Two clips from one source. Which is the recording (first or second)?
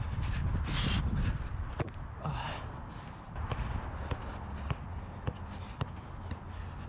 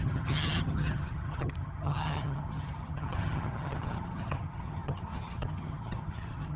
first